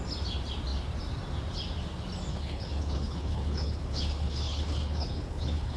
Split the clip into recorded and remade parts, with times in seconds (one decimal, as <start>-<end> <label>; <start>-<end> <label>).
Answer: 0.0-2.3 recorded; 2.3-5.8 remade